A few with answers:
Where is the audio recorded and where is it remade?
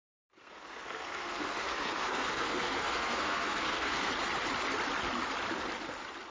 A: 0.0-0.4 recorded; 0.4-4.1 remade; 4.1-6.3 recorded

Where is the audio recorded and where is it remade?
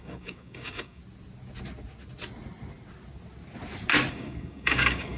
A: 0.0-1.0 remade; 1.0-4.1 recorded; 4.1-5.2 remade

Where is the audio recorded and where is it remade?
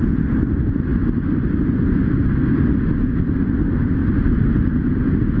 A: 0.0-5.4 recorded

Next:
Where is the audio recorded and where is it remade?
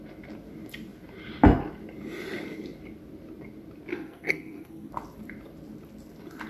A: 0.0-3.9 recorded; 3.9-4.9 remade; 4.9-6.5 recorded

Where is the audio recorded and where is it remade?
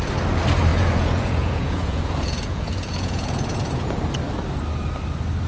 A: 0.0-0.7 recorded; 0.7-4.0 remade; 4.0-5.5 recorded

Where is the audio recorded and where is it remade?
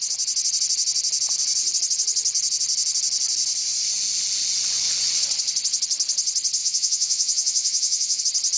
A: 0.0-6.6 recorded; 6.6-8.2 remade; 8.2-8.6 recorded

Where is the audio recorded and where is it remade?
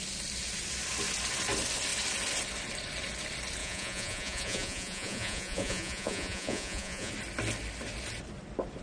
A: 0.0-3.6 recorded; 3.6-7.1 remade; 7.1-8.8 recorded